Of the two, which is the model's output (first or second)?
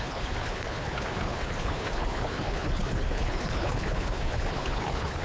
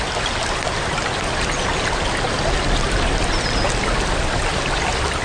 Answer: first